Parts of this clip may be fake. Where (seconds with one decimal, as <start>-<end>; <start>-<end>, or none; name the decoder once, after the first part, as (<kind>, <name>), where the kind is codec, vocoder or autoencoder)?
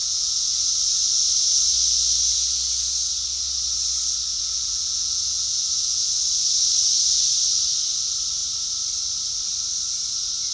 0.0-0.6 (vocoder, Vocos); 4.3-6.1